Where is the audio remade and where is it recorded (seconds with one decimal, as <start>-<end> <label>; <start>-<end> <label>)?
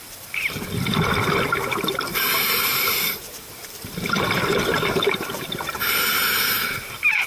0.0-2.1 recorded; 2.1-6.5 remade; 6.5-7.3 recorded